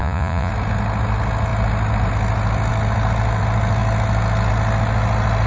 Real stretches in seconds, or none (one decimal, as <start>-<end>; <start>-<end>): 0.5-5.5